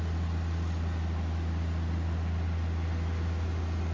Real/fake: real